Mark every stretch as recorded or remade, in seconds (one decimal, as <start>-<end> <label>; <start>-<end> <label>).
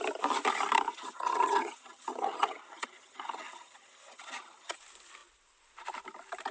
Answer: 0.0-0.9 recorded; 0.9-4.8 remade; 4.8-6.5 recorded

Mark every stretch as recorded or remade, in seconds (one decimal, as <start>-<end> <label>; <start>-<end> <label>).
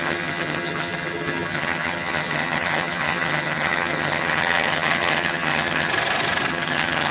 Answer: 0.0-5.9 remade; 5.9-6.5 recorded; 6.5-7.1 remade